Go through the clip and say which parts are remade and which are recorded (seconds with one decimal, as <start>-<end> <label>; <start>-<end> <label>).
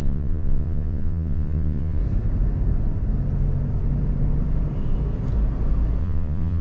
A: 0.0-2.0 remade; 2.0-6.0 recorded; 6.0-6.6 remade